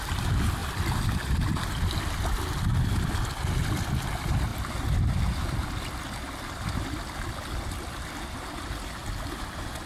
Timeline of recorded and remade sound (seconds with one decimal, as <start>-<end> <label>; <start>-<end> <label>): 0.0-9.9 recorded

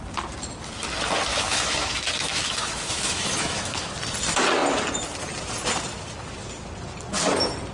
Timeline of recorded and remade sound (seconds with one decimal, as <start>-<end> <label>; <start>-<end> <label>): 0.0-1.3 recorded; 1.3-3.9 remade; 3.9-7.7 recorded

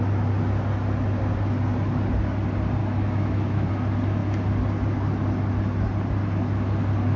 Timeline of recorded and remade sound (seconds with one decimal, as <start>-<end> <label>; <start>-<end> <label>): 0.0-2.8 recorded; 2.8-3.7 remade; 3.7-7.2 recorded

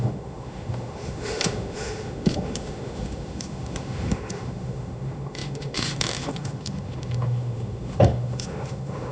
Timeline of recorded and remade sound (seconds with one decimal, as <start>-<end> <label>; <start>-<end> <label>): 0.0-9.1 remade

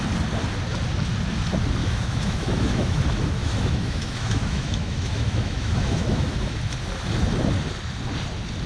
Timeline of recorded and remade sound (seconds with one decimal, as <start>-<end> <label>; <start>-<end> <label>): 0.0-1.8 recorded; 1.8-3.0 remade; 3.0-3.4 recorded; 3.4-6.6 remade; 6.6-8.7 recorded